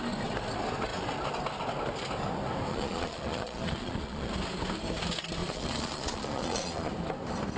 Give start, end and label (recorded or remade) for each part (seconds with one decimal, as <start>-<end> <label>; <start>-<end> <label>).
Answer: 0.0-2.7 recorded; 2.7-4.3 remade; 4.3-5.4 recorded; 5.4-6.9 remade; 6.9-7.6 recorded